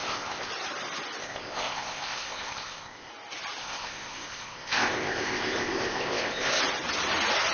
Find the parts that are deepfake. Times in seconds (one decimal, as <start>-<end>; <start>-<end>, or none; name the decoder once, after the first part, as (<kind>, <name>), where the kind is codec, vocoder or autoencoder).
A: 0.0-0.5 (codec, ZipCodec); 1.2-3.1; 3.6-6.6